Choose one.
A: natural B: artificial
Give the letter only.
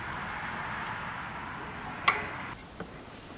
A